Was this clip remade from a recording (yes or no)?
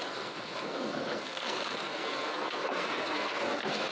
yes